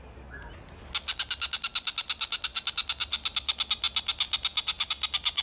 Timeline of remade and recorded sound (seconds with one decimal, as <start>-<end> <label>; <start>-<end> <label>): 0.0-5.4 recorded